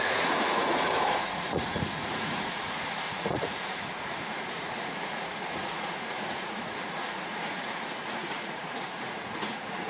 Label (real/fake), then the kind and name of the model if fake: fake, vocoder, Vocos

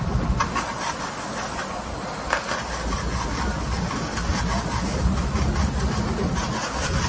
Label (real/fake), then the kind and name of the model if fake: real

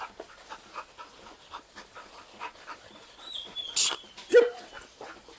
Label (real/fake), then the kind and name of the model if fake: real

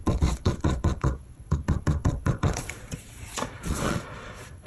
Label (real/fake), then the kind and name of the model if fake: fake, vocoder, Vocos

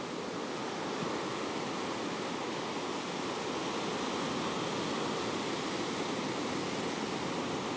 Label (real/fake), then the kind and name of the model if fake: real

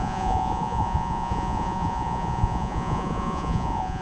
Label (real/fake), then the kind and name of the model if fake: fake, vocoder, Vocos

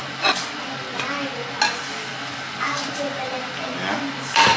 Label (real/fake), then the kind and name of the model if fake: real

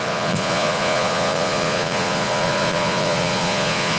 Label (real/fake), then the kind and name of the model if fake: fake, vocoder, Vocos